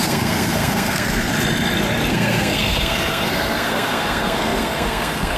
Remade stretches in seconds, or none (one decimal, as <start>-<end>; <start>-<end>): 0.0-1.3; 2.1-5.4